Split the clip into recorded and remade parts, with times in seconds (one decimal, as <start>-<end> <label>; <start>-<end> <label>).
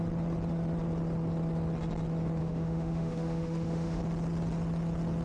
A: 0.0-2.4 recorded; 2.4-4.0 remade; 4.0-5.2 recorded